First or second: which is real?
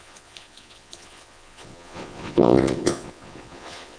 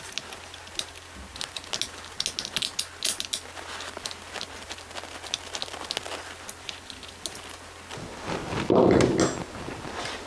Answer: second